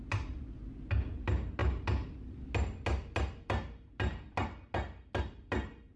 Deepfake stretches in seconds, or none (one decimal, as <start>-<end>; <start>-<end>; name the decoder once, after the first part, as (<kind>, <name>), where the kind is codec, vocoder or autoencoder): none